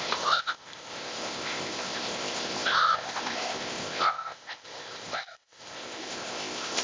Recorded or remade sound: remade